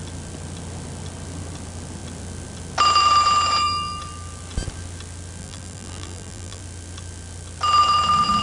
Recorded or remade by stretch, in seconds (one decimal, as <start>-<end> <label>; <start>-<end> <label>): 0.0-5.4 recorded; 5.4-6.6 remade; 6.6-8.4 recorded